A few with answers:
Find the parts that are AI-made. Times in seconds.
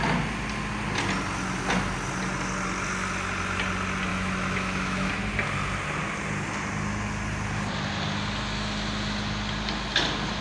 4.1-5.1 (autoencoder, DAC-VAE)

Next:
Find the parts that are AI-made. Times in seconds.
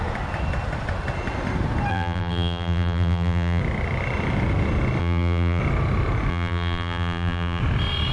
1.9-3.6 (vocoder, BigVGAN v2); 5.0-5.6; 6.3-7.6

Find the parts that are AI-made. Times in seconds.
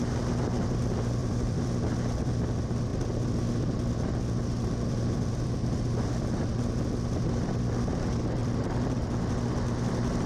1.2-1.7 (vocoder, BigVGAN v2); 8.4-9.2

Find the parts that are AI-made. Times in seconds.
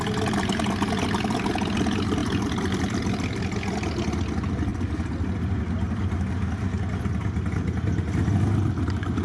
2.2-3.1 (vocoder, BigVGAN v2); 4.7-5.2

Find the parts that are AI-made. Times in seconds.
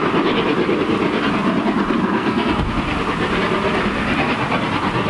2.0-2.7 (codec, SNAC)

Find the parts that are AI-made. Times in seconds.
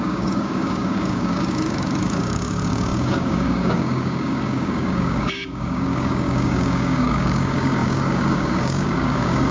0.0-9.5 (codec, DAC)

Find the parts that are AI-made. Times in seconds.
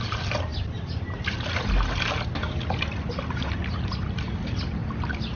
none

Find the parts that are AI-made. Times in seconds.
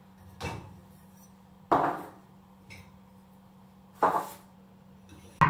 0.8-4.1 (vocoder, BigVGAN v2)